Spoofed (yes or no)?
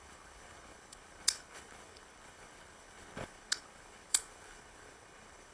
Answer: yes